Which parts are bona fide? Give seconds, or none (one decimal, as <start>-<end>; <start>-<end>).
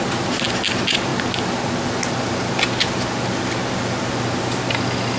0.0-5.2